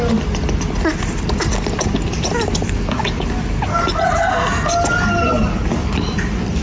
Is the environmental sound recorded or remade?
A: recorded